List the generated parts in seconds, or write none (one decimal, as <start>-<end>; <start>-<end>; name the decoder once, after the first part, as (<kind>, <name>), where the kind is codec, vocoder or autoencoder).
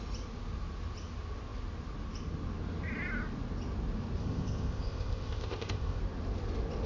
4.2-6.0 (codec, ZipCodec)